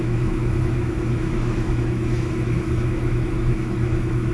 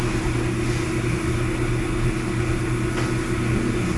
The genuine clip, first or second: second